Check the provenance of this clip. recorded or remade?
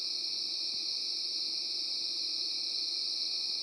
recorded